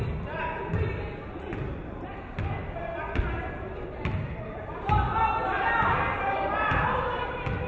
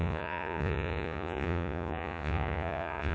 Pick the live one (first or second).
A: first